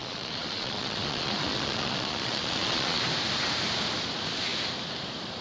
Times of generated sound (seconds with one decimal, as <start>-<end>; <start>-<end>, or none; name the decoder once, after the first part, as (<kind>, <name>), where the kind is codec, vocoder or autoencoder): 0.0-3.0 (vocoder, Vocos)